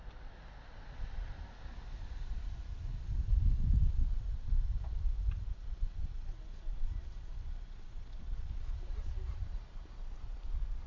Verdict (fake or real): fake